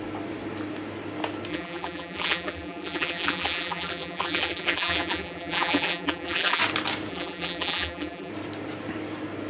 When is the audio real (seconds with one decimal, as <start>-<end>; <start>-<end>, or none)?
0.0-1.5; 6.6-7.1; 8.3-9.5